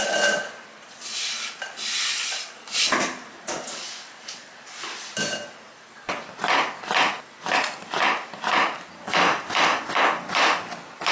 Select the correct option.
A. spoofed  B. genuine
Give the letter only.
B